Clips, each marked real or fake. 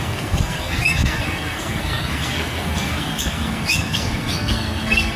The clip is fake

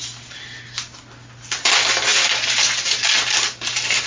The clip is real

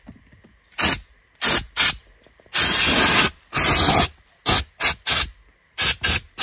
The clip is real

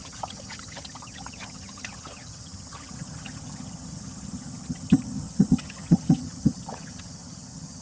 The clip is fake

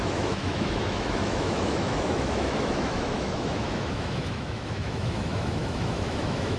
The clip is fake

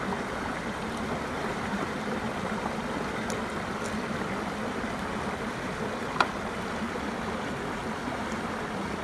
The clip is real